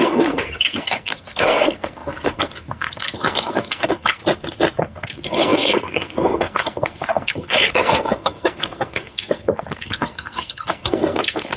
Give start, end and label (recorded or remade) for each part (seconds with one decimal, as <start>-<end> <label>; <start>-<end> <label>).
0.0-4.2 remade; 4.2-4.8 recorded; 4.8-11.6 remade